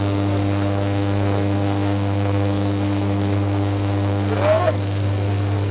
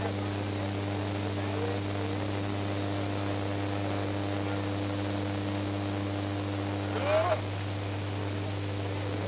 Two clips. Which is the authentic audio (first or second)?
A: second